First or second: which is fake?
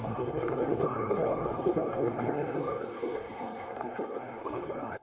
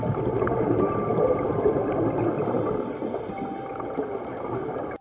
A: first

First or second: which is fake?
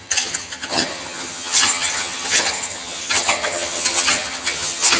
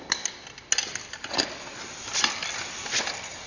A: first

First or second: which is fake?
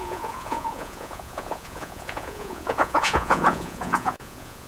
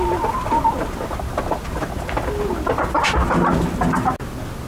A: first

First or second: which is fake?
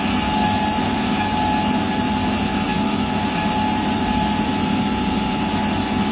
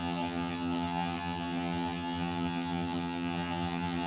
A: second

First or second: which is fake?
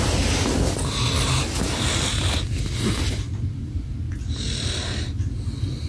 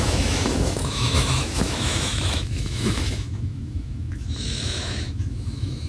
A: second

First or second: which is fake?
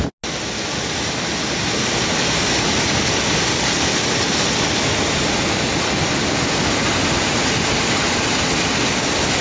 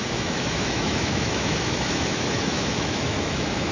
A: second